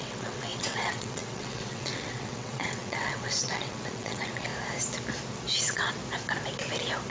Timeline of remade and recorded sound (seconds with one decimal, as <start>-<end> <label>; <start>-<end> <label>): 0.0-4.5 remade; 4.5-5.6 recorded; 5.6-6.0 remade; 6.0-7.1 recorded